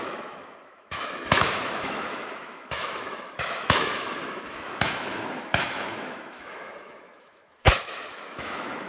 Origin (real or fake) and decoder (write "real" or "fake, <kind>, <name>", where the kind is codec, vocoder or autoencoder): fake, autoencoder, DAC-VAE